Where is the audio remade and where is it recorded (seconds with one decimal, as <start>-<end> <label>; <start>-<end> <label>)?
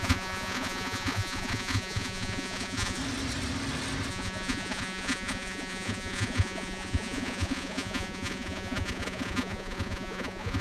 0.0-3.0 remade; 3.0-4.1 recorded; 4.1-10.6 remade